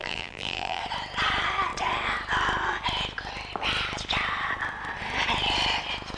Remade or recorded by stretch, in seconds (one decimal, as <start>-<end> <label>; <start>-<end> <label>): 0.0-0.8 remade; 0.8-6.2 recorded